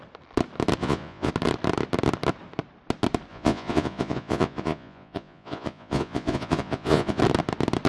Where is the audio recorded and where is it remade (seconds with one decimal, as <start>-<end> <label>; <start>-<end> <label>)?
0.0-0.8 recorded; 0.8-1.3 remade; 1.3-3.3 recorded; 3.3-7.2 remade; 7.2-7.9 recorded

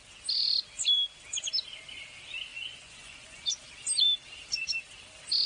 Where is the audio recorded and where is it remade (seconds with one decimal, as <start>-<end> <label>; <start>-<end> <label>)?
0.0-2.5 recorded; 2.5-3.5 remade; 3.5-5.5 recorded

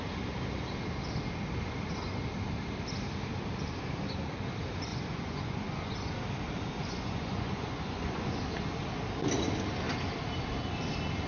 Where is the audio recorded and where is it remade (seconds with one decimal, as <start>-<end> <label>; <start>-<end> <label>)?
0.0-4.9 recorded; 4.9-5.9 remade; 5.9-6.8 recorded; 6.8-8.4 remade; 8.4-11.3 recorded

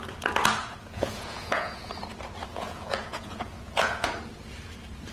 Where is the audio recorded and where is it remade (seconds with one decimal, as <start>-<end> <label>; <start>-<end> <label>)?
0.0-0.6 recorded; 0.6-1.9 remade; 1.9-2.5 recorded; 2.5-4.1 remade; 4.1-5.1 recorded

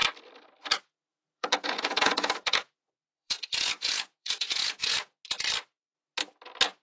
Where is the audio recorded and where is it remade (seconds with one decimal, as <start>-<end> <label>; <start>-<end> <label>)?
0.0-1.1 recorded; 1.1-5.2 remade; 5.2-6.8 recorded

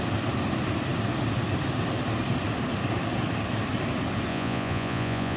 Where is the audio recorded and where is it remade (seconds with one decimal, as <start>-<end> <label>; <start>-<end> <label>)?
0.0-4.3 recorded; 4.3-5.4 remade